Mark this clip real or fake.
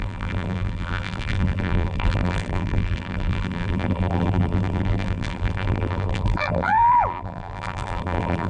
fake